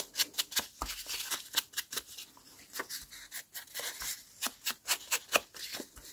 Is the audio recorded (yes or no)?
yes